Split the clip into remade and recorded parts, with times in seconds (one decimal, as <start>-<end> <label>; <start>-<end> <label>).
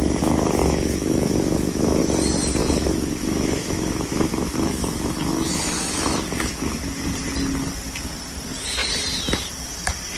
0.0-0.6 recorded; 0.6-2.0 remade; 2.0-2.6 recorded; 2.6-6.8 remade; 6.8-10.2 recorded